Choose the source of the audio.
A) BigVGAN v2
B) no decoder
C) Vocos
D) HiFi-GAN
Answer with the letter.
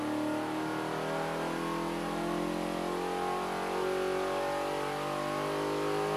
B